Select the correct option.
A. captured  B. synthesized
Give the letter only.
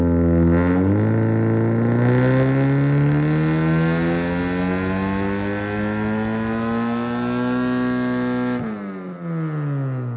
A